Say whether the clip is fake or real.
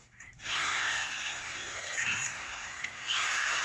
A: fake